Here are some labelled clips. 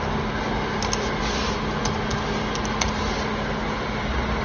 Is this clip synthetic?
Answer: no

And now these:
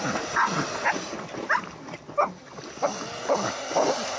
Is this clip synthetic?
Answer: no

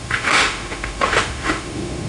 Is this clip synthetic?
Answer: yes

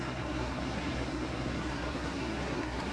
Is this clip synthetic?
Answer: yes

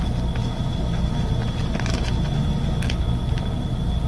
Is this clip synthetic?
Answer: no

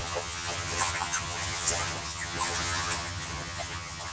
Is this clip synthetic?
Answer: yes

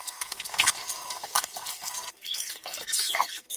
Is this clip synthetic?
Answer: yes